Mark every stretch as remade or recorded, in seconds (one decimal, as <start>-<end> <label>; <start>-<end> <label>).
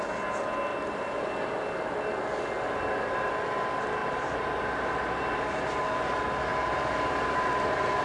0.0-0.7 recorded; 0.7-1.2 remade; 1.2-4.0 recorded; 4.0-6.1 remade; 6.1-6.5 recorded; 6.5-8.0 remade